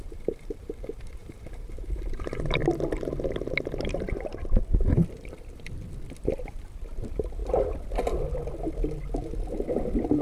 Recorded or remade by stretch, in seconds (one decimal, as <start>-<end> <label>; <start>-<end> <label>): 0.0-2.6 remade; 2.6-6.2 recorded; 6.2-7.4 remade; 7.4-10.2 recorded